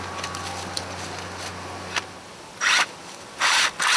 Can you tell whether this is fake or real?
real